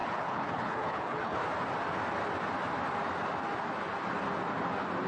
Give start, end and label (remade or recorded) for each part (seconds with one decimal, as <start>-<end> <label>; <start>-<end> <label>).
0.0-1.4 remade; 1.4-5.1 recorded